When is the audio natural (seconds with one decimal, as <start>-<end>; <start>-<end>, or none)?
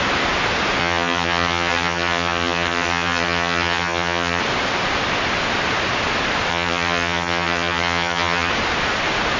0.0-0.8; 4.4-6.5; 8.5-9.4